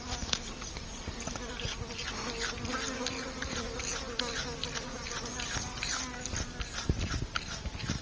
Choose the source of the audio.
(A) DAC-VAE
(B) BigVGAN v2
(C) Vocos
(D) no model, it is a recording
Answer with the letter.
D